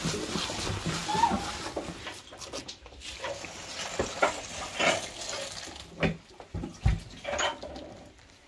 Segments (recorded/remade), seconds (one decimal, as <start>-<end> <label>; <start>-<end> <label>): 0.0-8.5 recorded